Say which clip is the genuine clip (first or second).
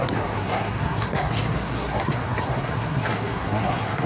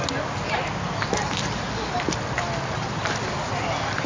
second